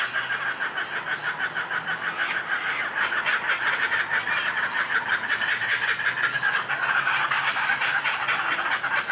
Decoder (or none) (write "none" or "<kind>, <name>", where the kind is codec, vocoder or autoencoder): none